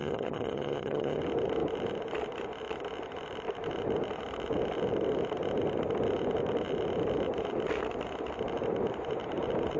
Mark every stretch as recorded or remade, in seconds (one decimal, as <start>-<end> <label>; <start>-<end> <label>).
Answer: 0.0-1.2 remade; 1.2-9.8 recorded